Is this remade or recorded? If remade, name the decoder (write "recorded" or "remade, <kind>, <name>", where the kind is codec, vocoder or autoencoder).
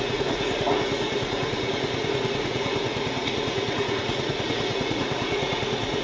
remade, vocoder, Vocos